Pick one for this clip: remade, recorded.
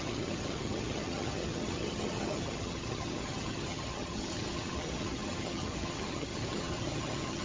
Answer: remade